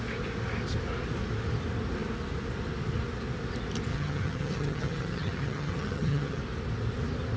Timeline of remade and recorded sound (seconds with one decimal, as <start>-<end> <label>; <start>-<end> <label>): 0.0-3.9 recorded; 3.9-6.4 remade; 6.4-7.4 recorded